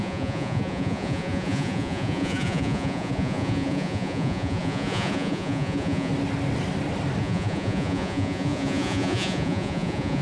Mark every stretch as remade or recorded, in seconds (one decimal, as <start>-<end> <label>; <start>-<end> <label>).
0.0-6.1 remade; 6.1-7.2 recorded; 7.2-10.2 remade